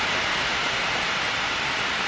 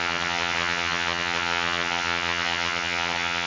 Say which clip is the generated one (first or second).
second